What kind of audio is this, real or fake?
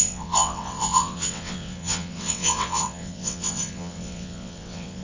fake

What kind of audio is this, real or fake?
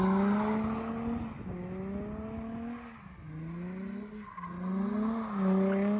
real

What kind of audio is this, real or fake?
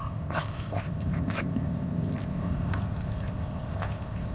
fake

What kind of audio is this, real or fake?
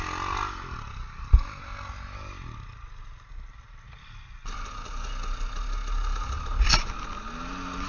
real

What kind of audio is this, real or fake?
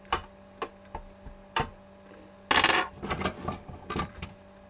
real